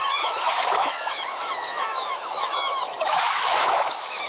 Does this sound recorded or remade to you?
remade